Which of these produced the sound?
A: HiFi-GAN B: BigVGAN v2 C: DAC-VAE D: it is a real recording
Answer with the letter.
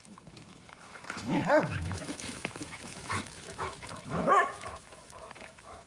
C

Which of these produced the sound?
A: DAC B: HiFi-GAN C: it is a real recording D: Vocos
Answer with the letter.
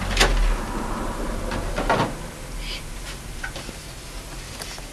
C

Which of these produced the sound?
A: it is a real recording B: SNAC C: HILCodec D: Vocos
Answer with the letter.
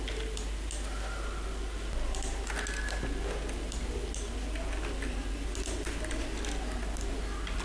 A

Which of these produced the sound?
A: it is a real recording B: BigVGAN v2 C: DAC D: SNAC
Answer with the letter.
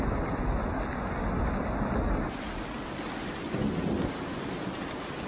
A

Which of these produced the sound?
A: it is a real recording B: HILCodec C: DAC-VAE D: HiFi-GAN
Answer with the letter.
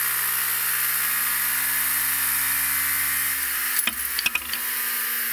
A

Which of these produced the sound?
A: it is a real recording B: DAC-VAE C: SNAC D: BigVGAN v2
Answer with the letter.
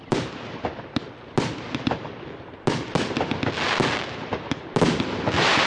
A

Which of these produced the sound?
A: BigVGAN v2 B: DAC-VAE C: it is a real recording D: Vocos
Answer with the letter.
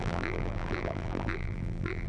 A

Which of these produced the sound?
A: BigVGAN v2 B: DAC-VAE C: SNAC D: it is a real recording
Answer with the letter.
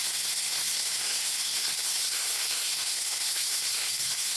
C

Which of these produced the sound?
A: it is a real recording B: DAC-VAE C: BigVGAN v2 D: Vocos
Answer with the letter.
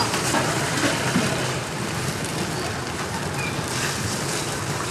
C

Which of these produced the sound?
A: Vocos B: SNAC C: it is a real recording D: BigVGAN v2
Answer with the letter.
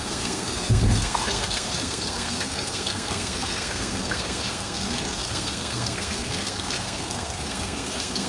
B